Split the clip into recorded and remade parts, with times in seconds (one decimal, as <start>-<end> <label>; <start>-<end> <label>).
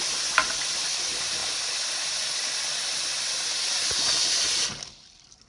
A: 0.0-5.5 recorded